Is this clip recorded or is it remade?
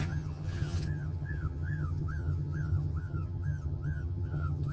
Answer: remade